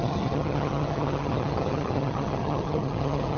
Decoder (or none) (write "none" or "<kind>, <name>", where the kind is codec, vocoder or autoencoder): vocoder, HiFi-GAN